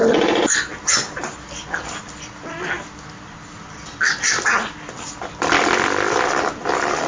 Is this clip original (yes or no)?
yes